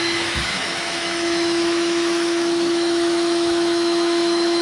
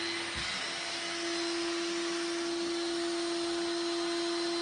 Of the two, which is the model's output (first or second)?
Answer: first